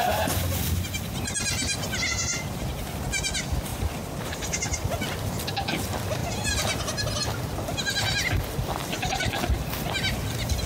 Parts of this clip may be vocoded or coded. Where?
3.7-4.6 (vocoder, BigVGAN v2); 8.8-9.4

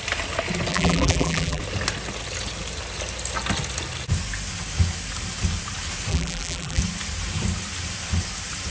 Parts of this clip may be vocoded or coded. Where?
0.7-1.6 (vocoder, BigVGAN v2); 6.1-6.8

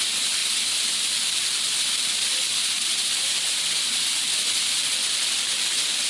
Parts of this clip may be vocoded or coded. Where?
2.6-4.2 (vocoder, BigVGAN v2)

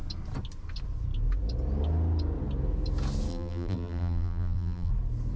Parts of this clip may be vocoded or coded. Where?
3.3-4.9 (vocoder, BigVGAN v2)

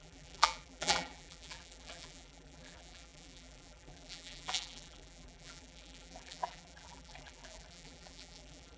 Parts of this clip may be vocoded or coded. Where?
0.0-8.8 (vocoder, BigVGAN v2)

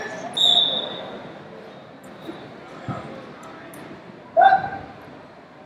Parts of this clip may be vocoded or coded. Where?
none